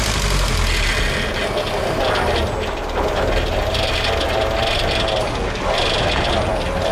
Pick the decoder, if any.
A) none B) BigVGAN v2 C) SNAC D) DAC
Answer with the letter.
A